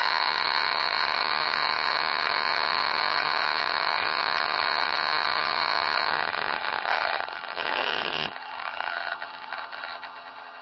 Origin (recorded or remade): remade